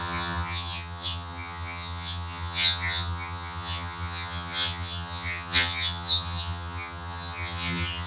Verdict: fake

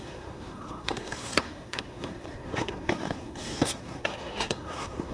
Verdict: fake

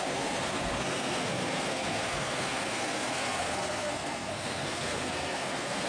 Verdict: fake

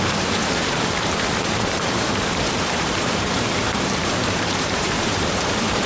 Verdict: fake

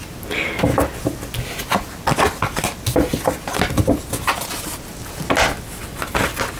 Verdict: real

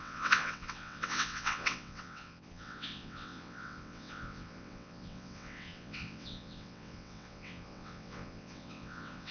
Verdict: fake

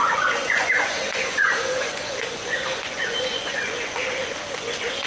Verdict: fake